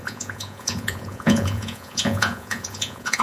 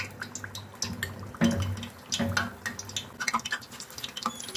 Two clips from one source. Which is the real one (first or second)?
second